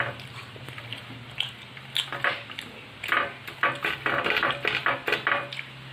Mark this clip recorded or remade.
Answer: recorded